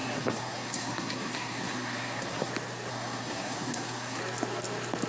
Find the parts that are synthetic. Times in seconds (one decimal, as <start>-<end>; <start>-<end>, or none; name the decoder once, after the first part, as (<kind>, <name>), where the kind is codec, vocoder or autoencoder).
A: 0.0-2.5 (codec, SNAC); 2.9-4.2